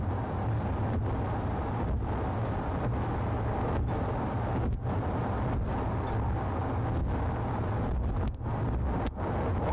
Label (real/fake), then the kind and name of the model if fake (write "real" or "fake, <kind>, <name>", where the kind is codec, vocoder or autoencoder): real